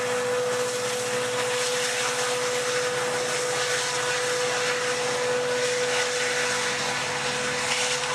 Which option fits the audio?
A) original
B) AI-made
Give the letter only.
A